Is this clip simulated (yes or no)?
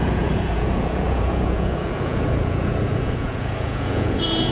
yes